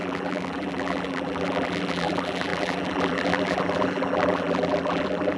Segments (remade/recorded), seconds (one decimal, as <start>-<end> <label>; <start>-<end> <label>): 0.0-5.4 remade